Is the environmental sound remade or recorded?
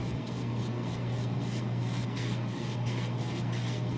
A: remade